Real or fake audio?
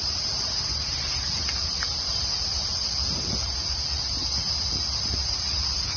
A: fake